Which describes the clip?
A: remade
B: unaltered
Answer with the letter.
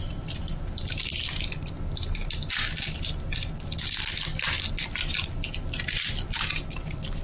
B